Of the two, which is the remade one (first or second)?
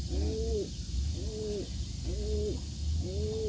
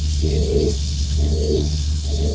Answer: second